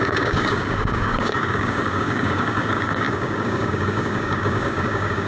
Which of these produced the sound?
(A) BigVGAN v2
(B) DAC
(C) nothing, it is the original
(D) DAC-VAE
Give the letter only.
B